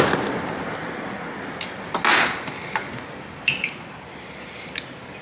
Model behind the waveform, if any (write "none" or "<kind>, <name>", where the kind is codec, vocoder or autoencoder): none